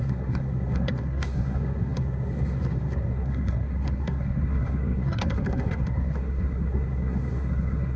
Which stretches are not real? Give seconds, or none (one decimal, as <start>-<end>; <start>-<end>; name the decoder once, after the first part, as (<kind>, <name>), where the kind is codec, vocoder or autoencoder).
0.0-8.0 (codec, SNAC)

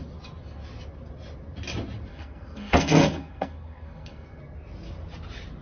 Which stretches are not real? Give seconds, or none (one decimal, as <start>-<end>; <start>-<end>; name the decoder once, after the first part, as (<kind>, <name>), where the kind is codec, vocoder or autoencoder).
2.1-4.4 (codec, SNAC)

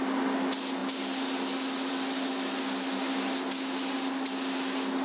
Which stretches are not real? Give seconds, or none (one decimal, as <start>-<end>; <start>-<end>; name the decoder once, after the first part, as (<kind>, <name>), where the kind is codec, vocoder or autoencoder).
none

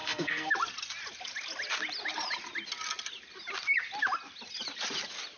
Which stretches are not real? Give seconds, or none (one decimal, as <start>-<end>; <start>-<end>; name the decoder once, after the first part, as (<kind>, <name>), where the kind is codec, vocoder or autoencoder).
0.0-0.5 (codec, SNAC)